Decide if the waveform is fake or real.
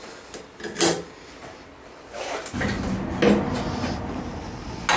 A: real